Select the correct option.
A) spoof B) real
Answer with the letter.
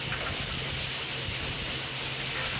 B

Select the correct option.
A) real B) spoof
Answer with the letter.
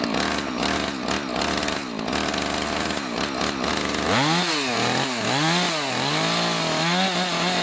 A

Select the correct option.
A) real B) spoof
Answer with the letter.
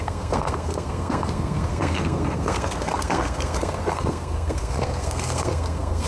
B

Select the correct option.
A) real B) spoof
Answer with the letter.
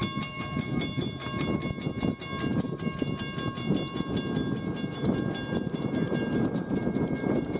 A